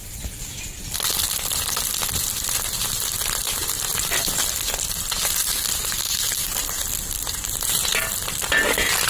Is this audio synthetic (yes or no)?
no